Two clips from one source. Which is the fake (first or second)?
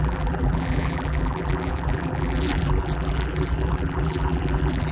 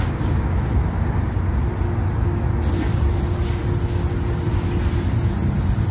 first